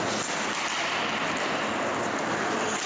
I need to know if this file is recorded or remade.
recorded